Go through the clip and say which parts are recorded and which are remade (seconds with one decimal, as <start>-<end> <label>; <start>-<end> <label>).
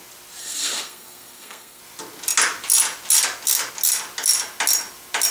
0.0-0.4 recorded; 0.4-1.8 remade; 1.8-5.3 recorded